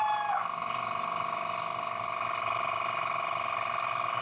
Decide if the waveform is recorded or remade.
recorded